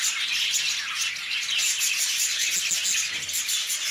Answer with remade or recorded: recorded